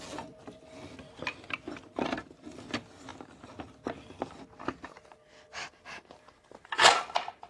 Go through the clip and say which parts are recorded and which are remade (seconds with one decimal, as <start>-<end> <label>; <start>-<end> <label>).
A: 0.0-7.5 recorded